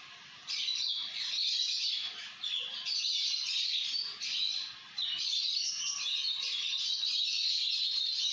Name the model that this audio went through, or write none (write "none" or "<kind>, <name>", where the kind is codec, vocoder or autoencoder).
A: none